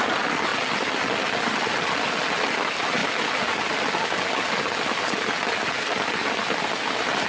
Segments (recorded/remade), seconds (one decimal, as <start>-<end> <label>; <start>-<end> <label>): 0.0-7.3 recorded